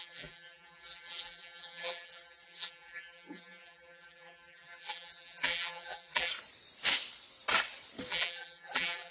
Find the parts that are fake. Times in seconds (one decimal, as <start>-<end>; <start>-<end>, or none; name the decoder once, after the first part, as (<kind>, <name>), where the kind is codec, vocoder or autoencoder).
0.0-6.3 (vocoder, BigVGAN v2); 8.1-9.1